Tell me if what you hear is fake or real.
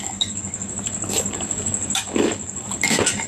fake